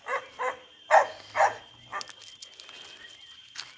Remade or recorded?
recorded